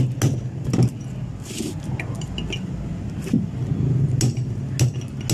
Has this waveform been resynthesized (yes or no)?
no